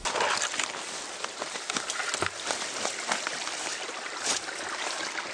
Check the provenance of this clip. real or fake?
real